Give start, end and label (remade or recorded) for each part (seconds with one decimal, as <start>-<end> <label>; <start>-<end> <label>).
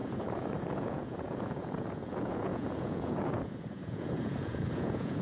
0.0-5.2 remade